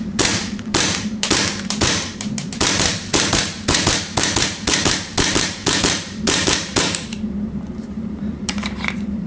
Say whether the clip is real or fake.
fake